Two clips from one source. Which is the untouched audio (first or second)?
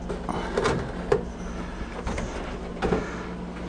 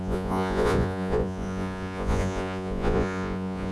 first